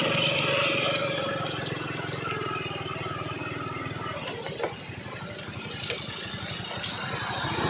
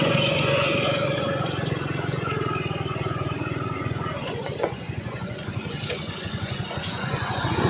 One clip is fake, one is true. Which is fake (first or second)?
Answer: second